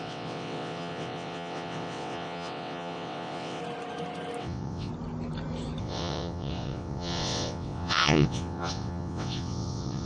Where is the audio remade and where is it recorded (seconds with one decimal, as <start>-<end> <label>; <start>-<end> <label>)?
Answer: 0.0-3.6 remade; 3.6-4.4 recorded; 4.4-4.9 remade; 4.9-5.8 recorded; 5.8-10.1 remade